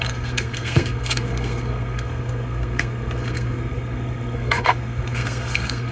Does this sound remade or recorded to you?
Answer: remade